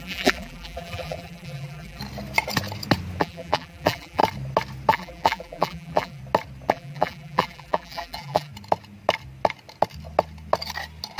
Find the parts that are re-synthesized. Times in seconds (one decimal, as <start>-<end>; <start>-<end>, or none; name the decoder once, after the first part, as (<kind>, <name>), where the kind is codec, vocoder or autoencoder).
0.0-2.0 (vocoder, BigVGAN v2); 3.2-4.2; 4.9-6.2; 6.7-8.5

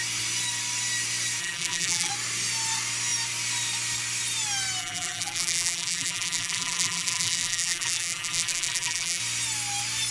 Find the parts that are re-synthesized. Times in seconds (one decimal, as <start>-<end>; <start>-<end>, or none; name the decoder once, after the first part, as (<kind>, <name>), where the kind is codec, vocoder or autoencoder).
1.4-2.1 (vocoder, BigVGAN v2); 4.8-9.2

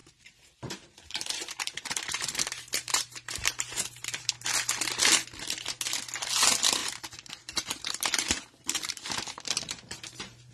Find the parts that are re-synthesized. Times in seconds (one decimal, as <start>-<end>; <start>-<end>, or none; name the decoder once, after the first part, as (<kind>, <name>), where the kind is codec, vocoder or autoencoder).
0.0-4.3 (vocoder, BigVGAN v2); 6.8-10.5

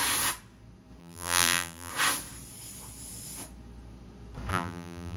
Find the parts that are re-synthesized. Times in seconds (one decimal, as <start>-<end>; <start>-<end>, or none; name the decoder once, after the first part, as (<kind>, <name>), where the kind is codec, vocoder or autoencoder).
1.0-1.9 (vocoder, BigVGAN v2); 4.5-5.2

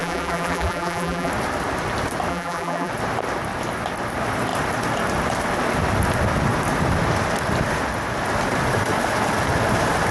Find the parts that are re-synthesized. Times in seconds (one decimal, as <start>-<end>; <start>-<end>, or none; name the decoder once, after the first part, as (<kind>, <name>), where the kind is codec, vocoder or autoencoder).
0.0-1.3 (vocoder, BigVGAN v2); 2.3-2.9

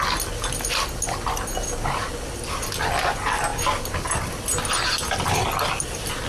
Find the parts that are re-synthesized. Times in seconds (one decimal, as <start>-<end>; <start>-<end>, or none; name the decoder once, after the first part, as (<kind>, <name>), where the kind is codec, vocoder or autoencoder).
none